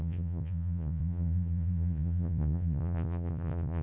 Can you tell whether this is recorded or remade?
remade